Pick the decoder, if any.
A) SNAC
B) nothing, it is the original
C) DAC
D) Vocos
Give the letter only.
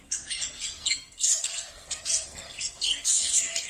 A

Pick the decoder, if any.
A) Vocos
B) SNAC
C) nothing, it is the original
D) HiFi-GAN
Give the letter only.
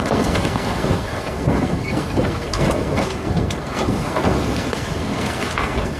B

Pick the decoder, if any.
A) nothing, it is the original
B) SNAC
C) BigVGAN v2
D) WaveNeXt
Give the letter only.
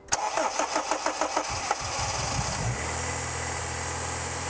A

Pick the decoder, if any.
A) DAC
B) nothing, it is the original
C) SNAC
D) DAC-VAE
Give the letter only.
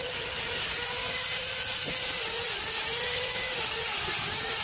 B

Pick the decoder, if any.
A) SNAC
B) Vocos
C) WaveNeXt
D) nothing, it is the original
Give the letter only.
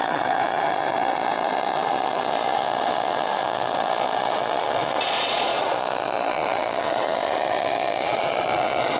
B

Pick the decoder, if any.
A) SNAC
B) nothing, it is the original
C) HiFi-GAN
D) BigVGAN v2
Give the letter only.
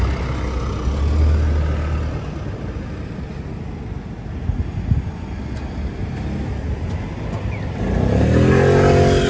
B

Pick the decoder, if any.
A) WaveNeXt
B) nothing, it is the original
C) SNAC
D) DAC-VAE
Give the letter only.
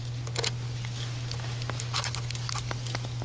B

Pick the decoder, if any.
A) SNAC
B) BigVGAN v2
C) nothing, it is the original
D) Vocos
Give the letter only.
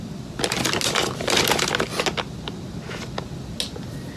C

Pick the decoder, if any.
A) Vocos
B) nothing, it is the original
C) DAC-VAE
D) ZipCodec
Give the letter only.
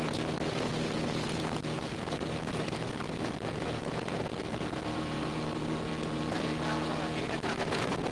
A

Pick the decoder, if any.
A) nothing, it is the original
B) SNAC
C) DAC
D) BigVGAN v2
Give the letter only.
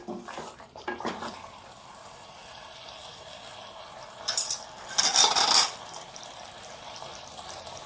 A